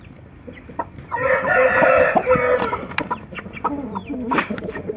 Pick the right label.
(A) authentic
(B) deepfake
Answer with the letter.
A